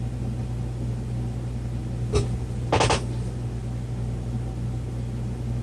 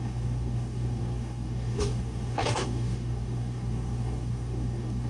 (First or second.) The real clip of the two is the first